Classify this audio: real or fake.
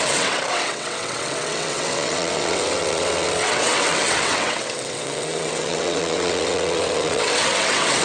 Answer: fake